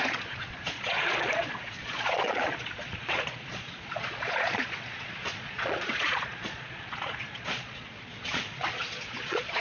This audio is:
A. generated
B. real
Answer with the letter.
A